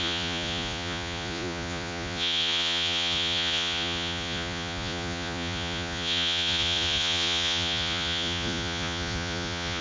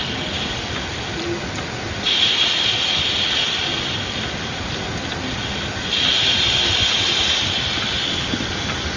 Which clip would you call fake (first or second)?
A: first